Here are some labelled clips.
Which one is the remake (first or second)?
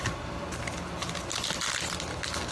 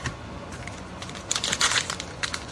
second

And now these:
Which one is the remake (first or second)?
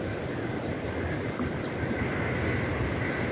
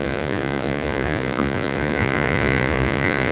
second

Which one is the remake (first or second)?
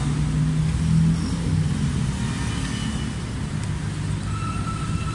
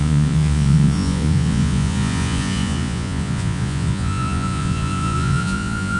second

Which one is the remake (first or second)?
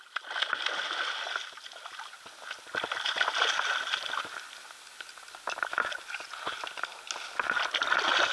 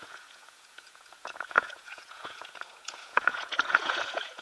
second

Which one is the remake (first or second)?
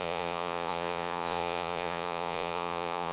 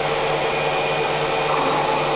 first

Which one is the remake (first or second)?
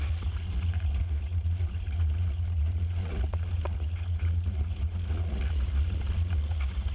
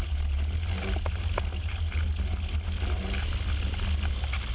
first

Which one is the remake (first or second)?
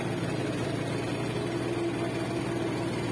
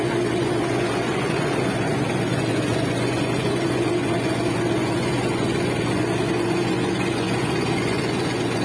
second